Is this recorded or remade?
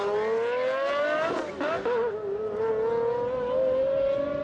recorded